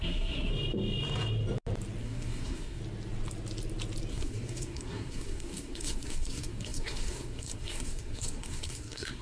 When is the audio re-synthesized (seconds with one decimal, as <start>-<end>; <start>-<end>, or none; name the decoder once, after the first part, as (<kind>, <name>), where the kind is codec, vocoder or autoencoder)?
0.0-0.5 (codec, SNAC); 2.0-2.8; 4.1-9.2

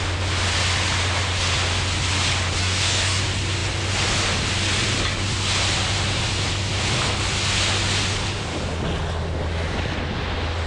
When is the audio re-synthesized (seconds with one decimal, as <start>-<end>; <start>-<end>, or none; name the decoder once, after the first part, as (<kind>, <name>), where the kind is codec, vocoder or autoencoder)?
2.6-3.2 (codec, DAC)

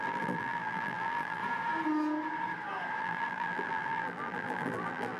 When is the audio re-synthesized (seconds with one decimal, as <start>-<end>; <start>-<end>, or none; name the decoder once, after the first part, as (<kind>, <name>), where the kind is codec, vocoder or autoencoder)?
0.0-1.4 (vocoder, BigVGAN v2); 3.0-5.2

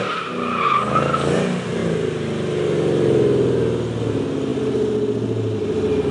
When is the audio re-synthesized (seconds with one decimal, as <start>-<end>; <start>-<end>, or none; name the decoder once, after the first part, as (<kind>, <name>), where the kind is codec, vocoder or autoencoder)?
none

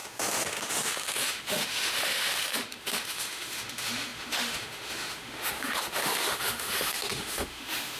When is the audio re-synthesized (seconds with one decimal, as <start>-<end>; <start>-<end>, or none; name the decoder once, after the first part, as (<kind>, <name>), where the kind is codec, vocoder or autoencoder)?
0.0-8.0 (autoencoder, DAC-VAE)

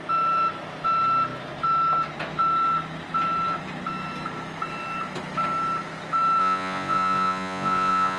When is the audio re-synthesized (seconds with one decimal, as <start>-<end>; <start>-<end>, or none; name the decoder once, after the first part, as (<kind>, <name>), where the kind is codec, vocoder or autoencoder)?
6.4-8.2 (vocoder, Vocos)

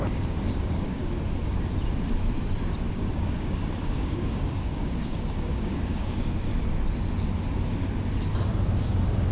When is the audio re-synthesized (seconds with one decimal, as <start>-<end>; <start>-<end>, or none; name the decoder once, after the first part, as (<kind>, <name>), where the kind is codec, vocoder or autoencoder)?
0.0-1.0 (codec, DAC); 2.9-6.5; 8.8-9.3